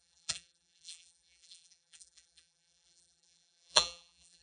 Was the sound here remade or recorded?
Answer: remade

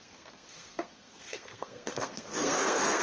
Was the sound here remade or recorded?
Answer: remade